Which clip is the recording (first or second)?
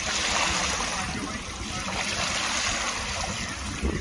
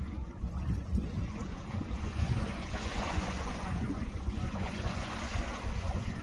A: first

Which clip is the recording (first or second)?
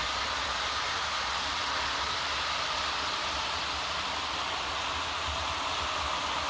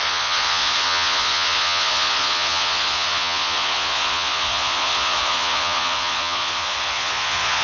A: first